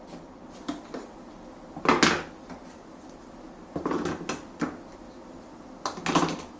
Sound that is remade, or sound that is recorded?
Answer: recorded